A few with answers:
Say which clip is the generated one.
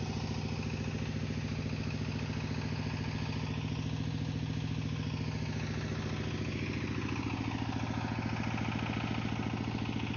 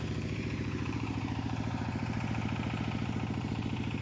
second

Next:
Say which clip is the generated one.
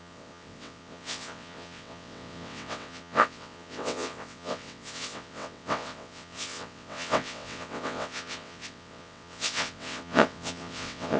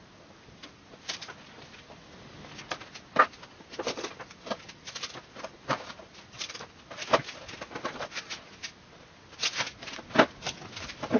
first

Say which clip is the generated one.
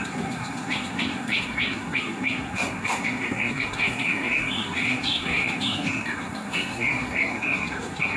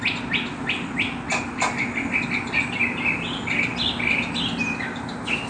first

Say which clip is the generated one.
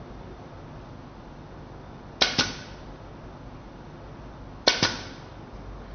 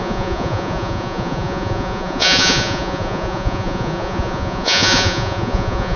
second